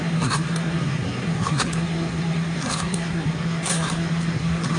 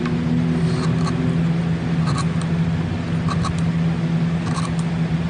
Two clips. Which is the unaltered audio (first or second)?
second